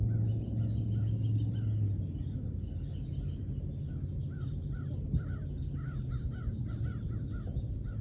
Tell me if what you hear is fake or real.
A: real